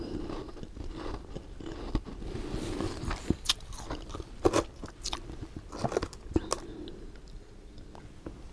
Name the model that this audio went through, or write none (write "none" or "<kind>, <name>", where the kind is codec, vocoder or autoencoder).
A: none